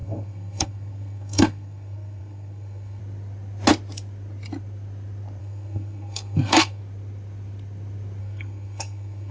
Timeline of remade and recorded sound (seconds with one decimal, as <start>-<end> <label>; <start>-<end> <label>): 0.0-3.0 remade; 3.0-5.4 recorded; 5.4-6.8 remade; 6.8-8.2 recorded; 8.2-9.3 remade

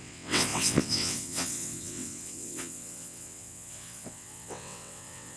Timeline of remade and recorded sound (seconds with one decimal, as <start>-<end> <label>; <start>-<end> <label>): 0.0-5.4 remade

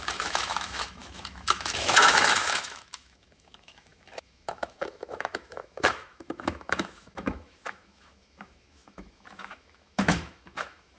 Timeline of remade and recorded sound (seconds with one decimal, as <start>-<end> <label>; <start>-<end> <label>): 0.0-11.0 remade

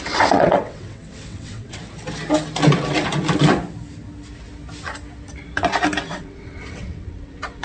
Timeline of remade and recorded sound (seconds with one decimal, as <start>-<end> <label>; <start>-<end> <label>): 0.0-1.8 remade; 1.8-6.0 recorded; 6.0-7.6 remade

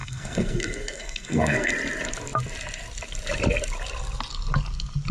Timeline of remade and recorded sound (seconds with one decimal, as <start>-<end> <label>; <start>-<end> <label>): 0.0-1.7 remade; 1.7-5.1 recorded

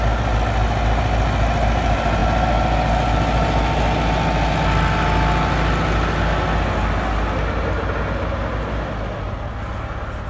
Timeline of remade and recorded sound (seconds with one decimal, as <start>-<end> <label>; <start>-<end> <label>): 0.0-10.3 recorded